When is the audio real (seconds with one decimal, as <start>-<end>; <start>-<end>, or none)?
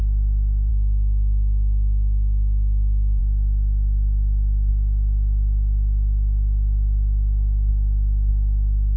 0.0-9.0